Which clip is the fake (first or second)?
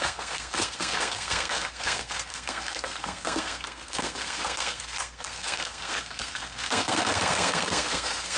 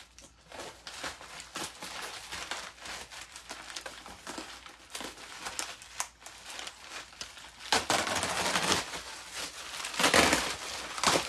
first